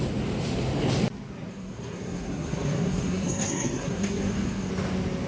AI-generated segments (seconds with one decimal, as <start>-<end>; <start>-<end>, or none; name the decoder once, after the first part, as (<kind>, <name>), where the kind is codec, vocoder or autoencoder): 1.5-4.7 (codec, SNAC)